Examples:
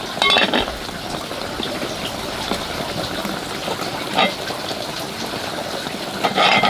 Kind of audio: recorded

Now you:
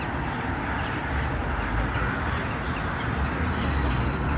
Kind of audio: recorded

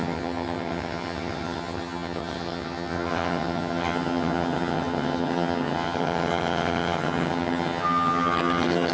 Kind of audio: remade